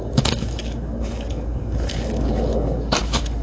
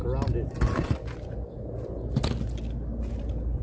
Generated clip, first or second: first